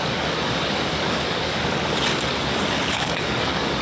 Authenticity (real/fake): fake